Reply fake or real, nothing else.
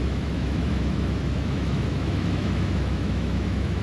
fake